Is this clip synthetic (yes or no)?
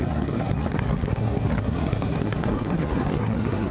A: yes